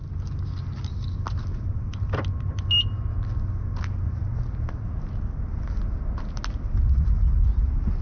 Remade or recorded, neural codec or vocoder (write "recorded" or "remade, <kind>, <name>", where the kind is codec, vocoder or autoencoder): recorded